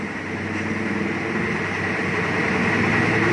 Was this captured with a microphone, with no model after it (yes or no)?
yes